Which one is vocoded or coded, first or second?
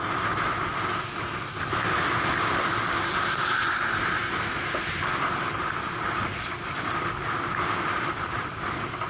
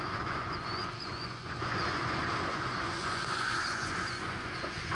second